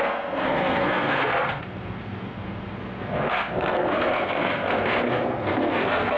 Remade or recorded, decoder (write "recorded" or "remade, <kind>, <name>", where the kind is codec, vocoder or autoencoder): remade, codec, SNAC